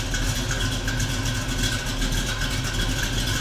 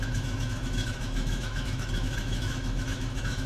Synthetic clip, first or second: second